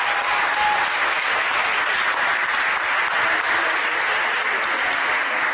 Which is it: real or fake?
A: real